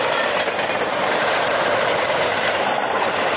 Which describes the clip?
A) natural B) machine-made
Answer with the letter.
A